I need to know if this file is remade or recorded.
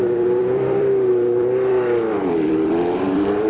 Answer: remade